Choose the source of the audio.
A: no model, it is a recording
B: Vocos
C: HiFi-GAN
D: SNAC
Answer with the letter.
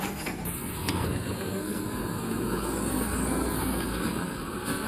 D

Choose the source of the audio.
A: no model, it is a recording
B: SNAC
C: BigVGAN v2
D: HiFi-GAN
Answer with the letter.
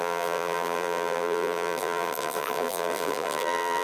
C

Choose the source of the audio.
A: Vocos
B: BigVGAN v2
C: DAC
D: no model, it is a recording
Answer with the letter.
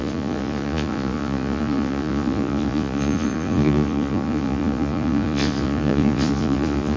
A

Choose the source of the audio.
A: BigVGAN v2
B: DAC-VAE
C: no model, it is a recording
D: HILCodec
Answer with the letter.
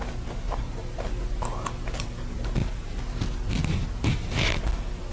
C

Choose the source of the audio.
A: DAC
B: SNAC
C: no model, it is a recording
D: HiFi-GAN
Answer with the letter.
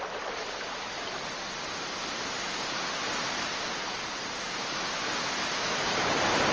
C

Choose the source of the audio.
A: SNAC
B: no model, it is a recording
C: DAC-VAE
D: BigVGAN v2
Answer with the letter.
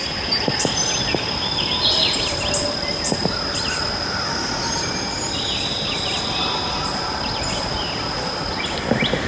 B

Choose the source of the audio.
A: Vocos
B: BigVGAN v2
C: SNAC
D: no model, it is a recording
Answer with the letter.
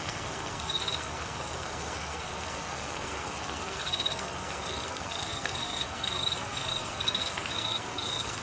C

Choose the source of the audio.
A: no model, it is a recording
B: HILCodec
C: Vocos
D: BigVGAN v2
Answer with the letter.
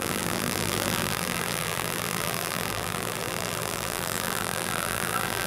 D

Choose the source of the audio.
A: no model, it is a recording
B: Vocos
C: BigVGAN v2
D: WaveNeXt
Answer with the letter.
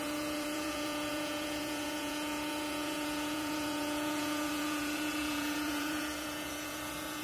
B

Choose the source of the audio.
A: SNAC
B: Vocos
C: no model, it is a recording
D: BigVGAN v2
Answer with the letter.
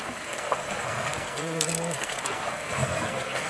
A